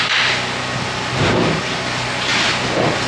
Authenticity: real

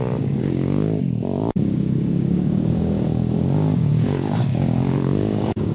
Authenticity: fake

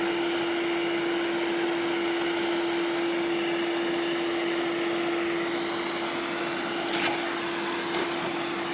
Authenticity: real